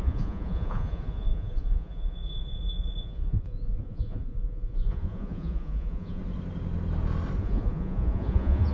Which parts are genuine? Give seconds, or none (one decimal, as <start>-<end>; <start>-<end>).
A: 6.2-7.4